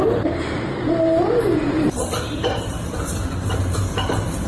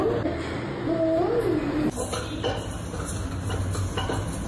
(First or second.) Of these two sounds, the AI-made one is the first